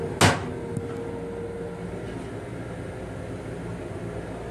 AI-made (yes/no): no